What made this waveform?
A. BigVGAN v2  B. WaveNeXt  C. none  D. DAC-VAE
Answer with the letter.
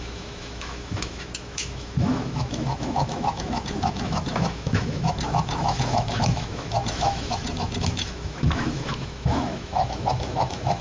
D